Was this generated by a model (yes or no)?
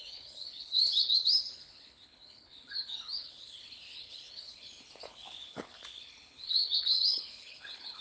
yes